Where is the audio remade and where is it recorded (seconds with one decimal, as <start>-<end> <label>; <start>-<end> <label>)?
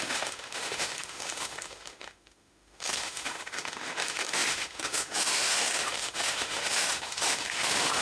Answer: 0.0-8.0 remade